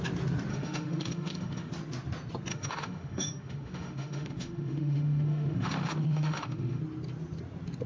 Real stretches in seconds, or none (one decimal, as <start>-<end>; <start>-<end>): 0.0-0.5; 1.7-2.5; 6.8-7.9